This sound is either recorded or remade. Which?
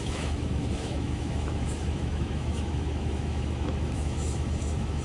remade